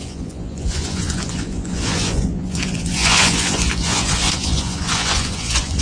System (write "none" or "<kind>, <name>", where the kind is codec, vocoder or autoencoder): vocoder, Vocos